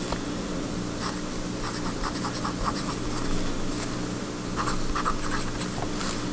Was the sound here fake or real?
real